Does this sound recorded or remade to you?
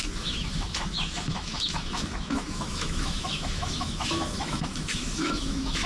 remade